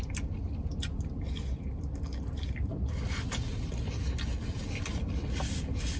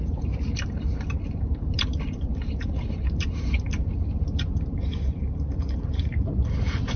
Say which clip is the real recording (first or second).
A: first